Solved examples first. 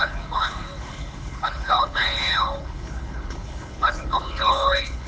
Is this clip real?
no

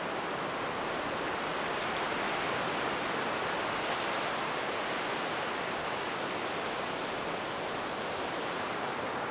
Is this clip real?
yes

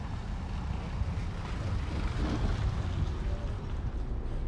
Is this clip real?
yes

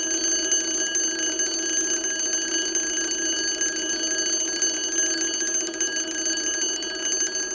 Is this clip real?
yes